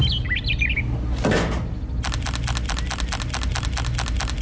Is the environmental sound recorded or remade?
recorded